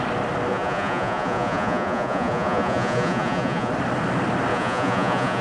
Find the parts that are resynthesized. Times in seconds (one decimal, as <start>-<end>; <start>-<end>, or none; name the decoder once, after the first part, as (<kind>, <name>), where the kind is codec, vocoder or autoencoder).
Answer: 0.5-3.7 (vocoder, Vocos); 4.5-5.4